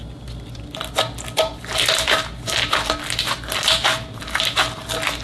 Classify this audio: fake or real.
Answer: real